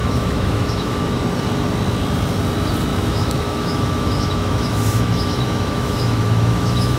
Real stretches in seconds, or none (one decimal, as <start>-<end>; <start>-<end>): 1.2-2.9